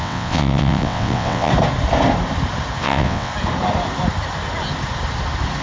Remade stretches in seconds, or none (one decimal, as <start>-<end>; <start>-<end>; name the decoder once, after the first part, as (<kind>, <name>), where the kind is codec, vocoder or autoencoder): 0.0-1.5 (vocoder, WaveNeXt); 2.8-3.3